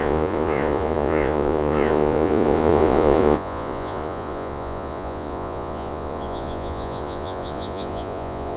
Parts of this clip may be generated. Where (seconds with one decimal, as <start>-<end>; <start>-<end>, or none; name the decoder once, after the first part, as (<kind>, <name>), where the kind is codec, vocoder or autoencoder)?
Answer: 0.0-8.6 (vocoder, Vocos)